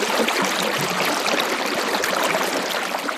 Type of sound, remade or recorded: recorded